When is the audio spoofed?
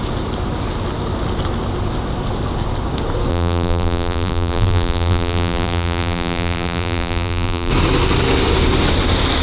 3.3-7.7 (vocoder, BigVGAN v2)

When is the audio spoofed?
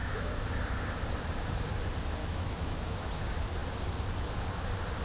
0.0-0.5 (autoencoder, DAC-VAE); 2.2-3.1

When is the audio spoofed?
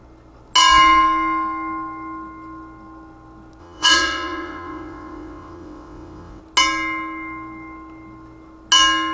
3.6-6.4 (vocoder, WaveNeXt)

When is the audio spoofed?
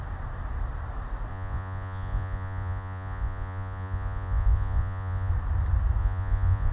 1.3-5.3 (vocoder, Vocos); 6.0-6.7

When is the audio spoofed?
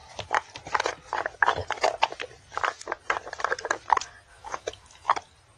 4.3-5.1 (autoencoder, DAC-VAE)